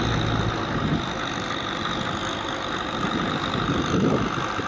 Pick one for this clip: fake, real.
real